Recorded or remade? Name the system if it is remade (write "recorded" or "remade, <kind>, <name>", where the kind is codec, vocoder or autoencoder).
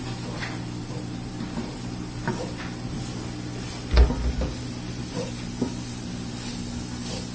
recorded